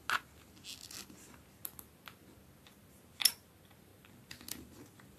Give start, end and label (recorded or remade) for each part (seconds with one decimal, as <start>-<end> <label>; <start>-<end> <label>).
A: 0.0-5.2 recorded